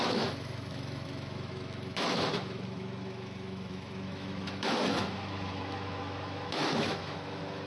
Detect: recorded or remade remade